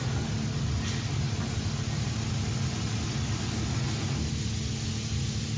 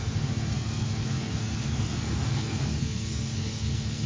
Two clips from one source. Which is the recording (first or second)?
first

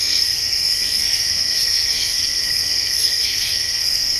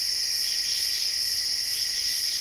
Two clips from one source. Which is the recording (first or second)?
second